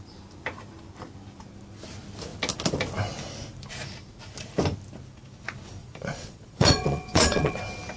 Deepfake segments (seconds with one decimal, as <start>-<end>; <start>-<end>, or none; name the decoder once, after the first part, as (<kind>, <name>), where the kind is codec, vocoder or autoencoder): 5.8-7.6 (vocoder, Vocos)